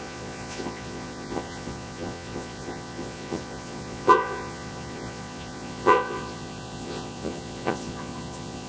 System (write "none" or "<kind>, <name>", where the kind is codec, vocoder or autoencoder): vocoder, Vocos